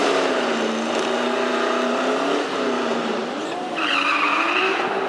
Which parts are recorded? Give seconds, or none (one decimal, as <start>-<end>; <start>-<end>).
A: 0.0-1.5; 4.6-5.1